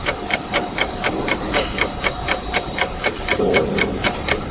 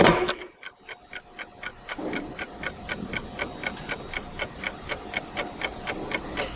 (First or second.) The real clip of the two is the second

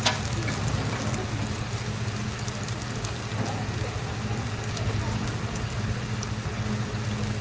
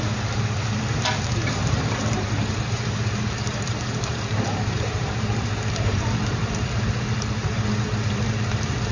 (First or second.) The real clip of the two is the first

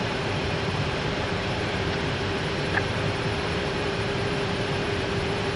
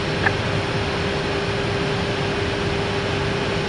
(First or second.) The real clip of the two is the second